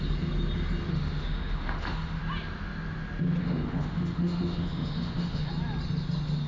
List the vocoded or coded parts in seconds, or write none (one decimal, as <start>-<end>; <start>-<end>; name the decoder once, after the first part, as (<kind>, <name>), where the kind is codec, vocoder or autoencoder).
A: 0.9-2.2 (autoencoder, DAC-VAE); 3.4-5.5